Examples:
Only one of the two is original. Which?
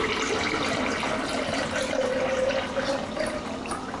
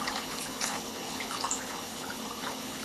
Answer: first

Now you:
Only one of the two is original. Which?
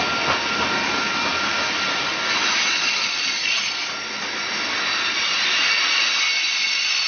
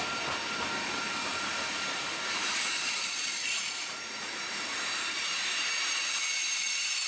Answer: first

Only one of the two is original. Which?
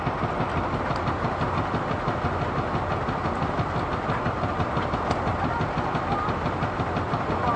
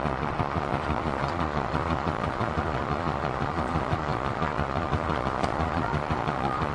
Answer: first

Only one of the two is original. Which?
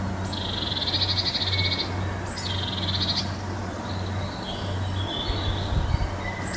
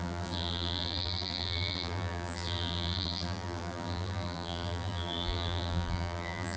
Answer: first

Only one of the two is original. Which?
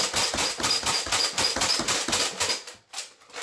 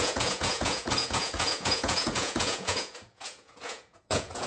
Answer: first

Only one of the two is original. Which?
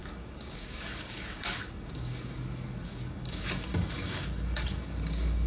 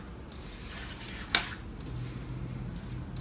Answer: second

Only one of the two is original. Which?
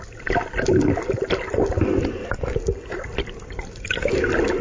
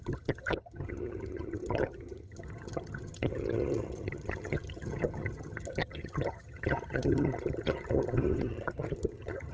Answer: first